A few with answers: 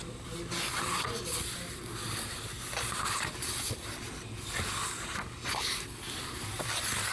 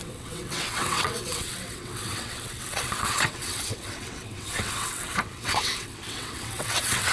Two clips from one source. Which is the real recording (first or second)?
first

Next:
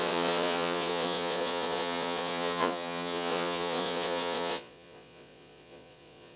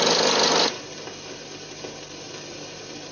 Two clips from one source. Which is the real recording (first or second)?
second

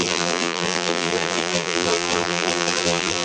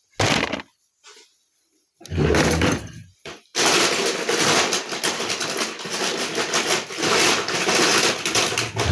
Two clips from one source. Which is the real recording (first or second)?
second